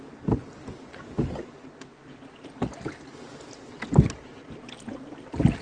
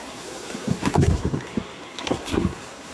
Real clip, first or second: first